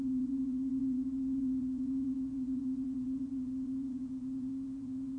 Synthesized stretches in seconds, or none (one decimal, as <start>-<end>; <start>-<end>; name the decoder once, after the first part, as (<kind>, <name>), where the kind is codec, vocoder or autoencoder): 0.0-5.2 (vocoder, Vocos)